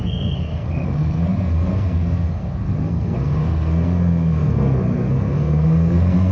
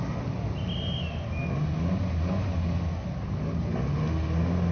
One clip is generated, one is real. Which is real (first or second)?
second